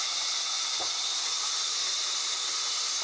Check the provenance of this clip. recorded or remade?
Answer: recorded